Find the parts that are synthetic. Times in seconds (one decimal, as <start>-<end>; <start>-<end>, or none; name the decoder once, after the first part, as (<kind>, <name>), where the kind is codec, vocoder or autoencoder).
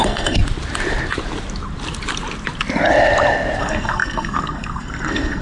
0.0-0.4 (codec, SNAC); 3.6-5.4